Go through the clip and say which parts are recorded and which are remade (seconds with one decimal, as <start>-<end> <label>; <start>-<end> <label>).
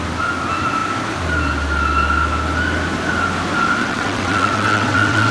0.0-3.8 recorded; 3.8-5.3 remade